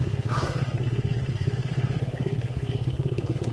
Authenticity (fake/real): fake